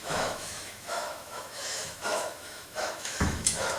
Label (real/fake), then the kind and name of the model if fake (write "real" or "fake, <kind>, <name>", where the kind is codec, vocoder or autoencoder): fake, autoencoder, DAC-VAE